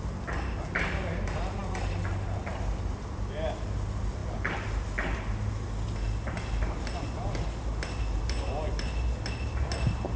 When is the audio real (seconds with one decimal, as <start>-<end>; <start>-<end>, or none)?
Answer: 0.0-10.2